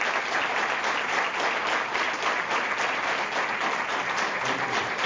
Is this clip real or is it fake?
real